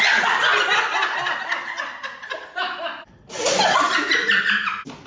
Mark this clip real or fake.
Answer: real